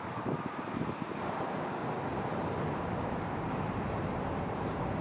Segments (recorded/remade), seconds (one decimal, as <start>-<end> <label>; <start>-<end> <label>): 0.0-1.8 remade; 1.8-3.5 recorded; 3.5-5.0 remade